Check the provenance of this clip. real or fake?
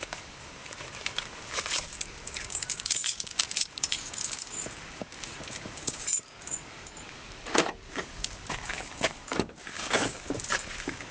fake